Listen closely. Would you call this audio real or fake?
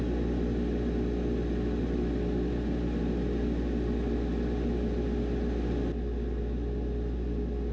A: real